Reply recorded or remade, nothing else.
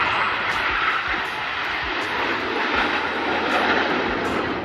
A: recorded